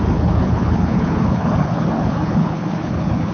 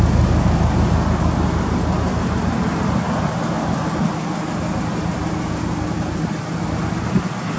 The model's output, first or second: first